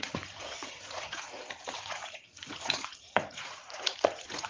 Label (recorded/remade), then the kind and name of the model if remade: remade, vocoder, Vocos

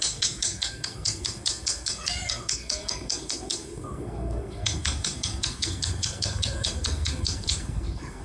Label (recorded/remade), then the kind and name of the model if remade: remade, codec, SNAC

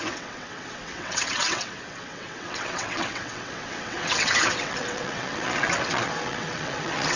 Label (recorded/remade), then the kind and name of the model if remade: remade, vocoder, WaveNeXt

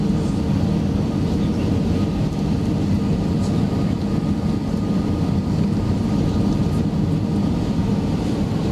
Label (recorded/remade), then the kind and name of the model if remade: recorded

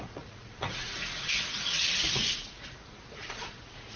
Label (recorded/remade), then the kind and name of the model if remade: remade, vocoder, Vocos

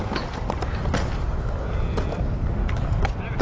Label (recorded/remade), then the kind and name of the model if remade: recorded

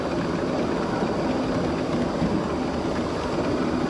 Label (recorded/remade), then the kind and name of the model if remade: recorded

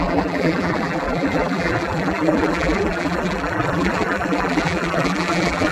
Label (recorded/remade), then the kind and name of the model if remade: remade, vocoder, BigVGAN v2